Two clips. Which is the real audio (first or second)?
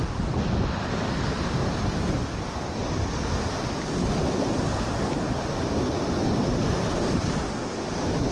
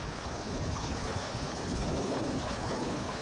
first